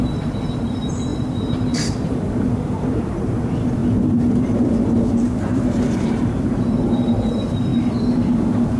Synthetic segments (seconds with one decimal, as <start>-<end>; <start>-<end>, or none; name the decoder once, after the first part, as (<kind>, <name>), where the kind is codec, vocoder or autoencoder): 0.0-7.7 (vocoder, BigVGAN v2)